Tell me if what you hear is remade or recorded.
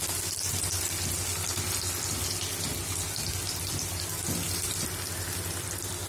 recorded